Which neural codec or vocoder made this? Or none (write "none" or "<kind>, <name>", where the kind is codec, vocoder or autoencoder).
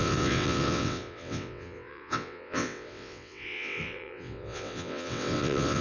vocoder, WaveNeXt